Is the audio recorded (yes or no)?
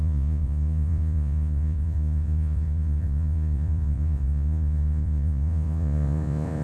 no